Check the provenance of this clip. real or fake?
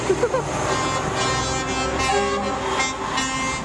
real